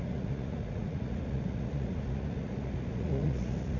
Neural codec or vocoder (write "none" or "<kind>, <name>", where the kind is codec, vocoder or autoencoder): vocoder, Vocos